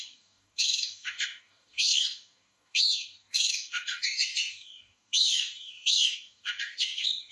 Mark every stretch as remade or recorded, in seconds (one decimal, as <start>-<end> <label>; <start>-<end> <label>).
0.0-7.3 remade